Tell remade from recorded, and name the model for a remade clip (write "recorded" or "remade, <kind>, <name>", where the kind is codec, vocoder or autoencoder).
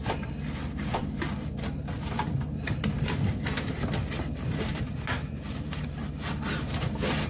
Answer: recorded